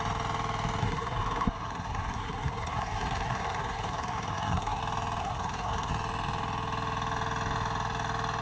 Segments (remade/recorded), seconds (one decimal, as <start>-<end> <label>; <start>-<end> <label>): 0.0-0.8 recorded; 0.8-4.8 remade; 4.8-5.2 recorded; 5.2-5.9 remade; 5.9-8.4 recorded